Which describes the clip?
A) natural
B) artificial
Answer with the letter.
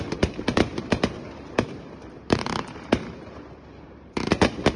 B